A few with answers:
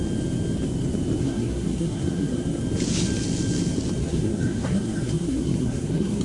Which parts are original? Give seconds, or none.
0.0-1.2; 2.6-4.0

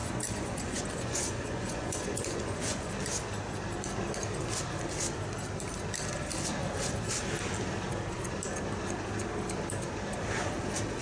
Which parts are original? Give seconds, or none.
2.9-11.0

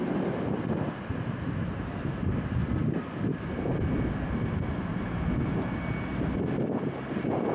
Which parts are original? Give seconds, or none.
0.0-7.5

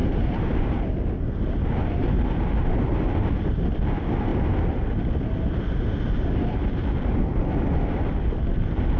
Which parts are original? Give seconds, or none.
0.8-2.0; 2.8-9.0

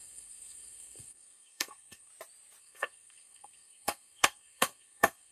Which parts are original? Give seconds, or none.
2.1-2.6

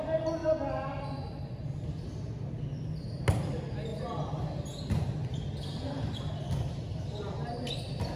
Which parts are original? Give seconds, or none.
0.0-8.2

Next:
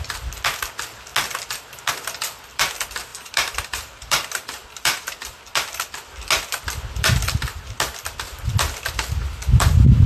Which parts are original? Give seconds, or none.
0.0-3.1; 5.4-10.1